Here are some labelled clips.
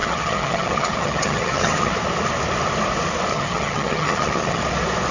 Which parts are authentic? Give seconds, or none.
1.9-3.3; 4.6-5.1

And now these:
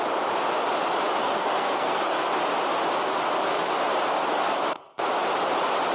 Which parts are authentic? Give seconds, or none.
0.0-1.2; 2.3-5.9

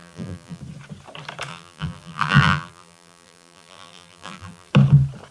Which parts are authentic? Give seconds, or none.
0.6-1.5; 4.7-5.3

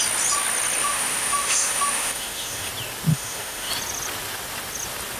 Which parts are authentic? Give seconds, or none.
0.0-0.8; 2.7-3.1; 3.7-5.2

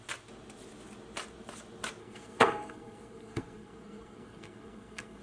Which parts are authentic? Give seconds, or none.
0.0-2.0

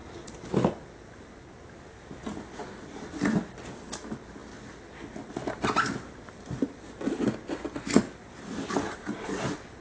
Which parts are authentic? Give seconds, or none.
0.0-9.8